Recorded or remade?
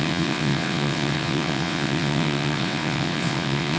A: remade